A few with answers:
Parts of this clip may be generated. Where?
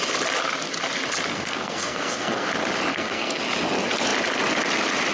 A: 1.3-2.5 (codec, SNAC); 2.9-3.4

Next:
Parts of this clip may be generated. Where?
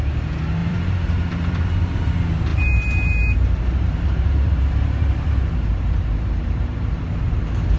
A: 0.6-1.1 (vocoder, BigVGAN v2); 2.5-7.1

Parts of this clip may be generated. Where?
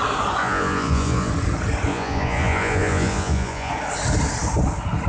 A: 0.4-1.3 (vocoder, Vocos); 1.9-3.7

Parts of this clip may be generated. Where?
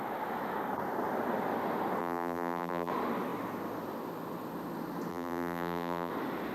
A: 2.0-2.9 (vocoder, BigVGAN v2); 5.1-6.1